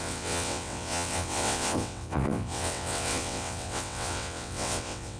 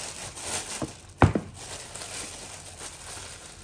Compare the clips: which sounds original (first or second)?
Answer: second